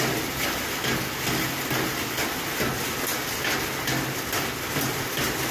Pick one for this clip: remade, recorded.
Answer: recorded